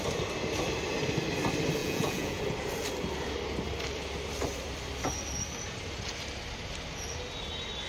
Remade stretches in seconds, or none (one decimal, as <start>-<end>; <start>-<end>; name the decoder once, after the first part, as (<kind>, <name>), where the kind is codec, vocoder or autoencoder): 1.8-2.4 (vocoder, Vocos)